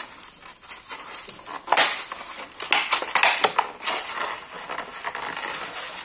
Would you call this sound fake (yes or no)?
no